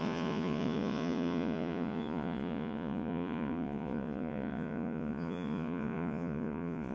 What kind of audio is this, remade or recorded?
remade